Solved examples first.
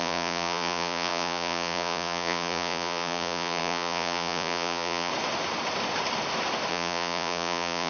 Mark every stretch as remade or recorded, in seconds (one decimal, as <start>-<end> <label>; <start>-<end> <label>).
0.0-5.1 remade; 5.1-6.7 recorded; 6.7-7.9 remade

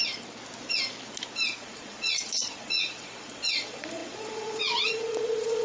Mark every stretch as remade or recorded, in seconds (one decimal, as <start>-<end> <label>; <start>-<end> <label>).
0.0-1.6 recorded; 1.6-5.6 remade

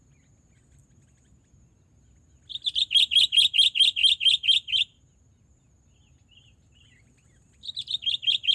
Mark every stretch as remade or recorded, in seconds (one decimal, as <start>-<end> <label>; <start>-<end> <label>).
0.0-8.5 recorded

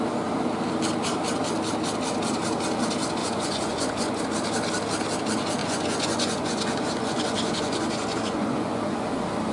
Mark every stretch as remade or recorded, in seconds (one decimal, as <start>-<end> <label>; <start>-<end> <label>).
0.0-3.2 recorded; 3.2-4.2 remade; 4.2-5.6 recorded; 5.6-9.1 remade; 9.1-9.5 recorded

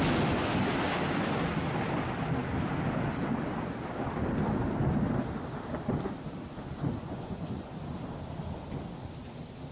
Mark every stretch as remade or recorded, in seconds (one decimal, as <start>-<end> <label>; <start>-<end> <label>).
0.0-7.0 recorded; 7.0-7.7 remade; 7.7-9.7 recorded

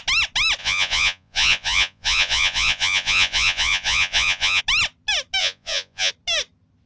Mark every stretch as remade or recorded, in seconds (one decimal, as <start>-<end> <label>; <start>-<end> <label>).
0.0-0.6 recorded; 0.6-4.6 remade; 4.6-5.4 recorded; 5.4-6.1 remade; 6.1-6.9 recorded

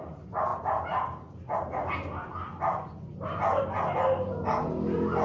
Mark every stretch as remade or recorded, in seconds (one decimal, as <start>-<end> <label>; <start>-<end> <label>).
0.0-5.2 recorded